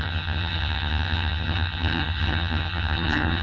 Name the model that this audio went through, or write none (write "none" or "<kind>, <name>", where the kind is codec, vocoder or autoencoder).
vocoder, HiFi-GAN